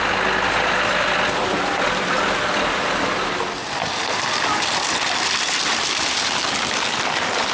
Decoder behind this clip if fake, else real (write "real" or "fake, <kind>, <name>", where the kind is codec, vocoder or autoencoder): real